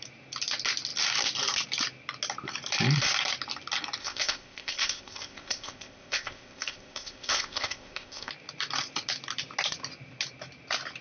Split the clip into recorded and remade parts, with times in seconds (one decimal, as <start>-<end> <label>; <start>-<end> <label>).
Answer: 0.0-4.0 recorded; 4.0-8.3 remade; 8.3-11.0 recorded